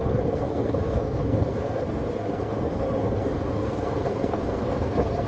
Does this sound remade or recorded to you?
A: remade